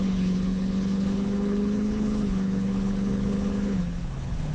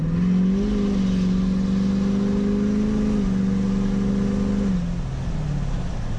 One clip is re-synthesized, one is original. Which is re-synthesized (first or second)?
first